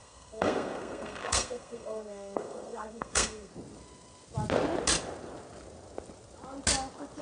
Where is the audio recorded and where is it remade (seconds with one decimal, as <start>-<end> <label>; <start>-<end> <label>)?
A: 0.0-3.5 remade; 3.5-7.2 recorded